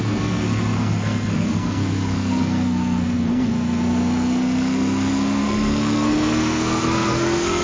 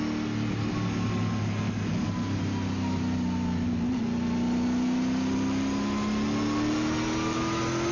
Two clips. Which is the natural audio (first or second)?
second